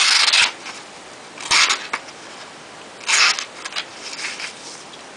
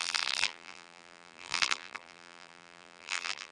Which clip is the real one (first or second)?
first